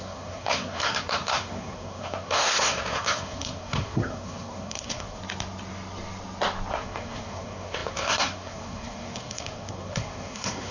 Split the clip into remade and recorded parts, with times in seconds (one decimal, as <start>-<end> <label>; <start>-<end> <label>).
0.0-5.2 remade; 5.2-6.7 recorded; 6.7-10.7 remade